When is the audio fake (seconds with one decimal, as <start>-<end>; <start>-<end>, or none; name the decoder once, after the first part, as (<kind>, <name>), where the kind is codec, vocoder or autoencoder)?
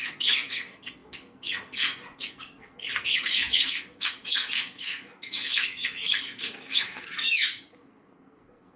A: 0.0-8.8 (codec, SNAC)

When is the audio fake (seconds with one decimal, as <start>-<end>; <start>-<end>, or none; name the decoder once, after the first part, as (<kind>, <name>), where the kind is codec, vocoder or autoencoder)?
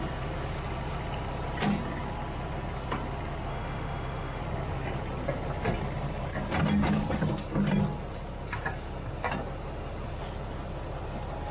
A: 3.5-4.4 (autoencoder, DAC-VAE)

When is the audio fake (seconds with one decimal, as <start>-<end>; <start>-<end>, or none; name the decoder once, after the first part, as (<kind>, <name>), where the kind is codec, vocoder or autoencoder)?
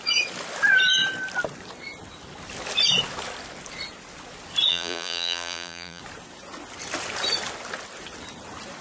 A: 4.7-6.0 (vocoder, BigVGAN v2)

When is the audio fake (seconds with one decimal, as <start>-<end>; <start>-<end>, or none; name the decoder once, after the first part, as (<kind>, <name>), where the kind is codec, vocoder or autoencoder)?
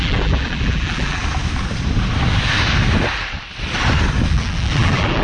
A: 0.0-1.2 (vocoder, BigVGAN v2); 4.3-5.2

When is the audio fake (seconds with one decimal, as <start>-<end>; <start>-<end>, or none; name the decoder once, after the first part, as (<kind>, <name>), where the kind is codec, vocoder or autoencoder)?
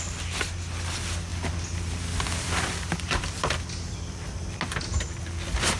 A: none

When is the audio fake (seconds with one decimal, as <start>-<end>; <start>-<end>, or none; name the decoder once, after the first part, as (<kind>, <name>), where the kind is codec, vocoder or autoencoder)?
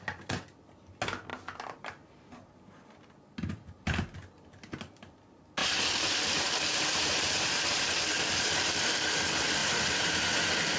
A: 5.6-7.9 (vocoder, BigVGAN v2); 9.6-10.2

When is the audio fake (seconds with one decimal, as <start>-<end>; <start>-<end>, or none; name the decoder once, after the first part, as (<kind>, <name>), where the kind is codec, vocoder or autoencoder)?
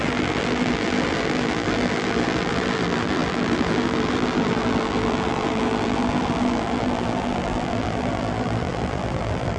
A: 0.0-9.6 (vocoder, BigVGAN v2)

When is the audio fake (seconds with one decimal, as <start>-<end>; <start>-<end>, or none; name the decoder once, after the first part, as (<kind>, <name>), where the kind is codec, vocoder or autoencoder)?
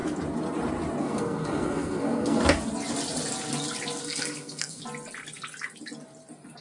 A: 1.0-2.4 (codec, SNAC); 4.0-4.8